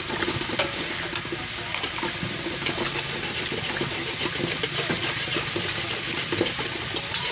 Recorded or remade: recorded